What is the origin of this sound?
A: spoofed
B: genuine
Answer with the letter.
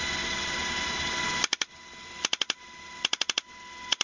B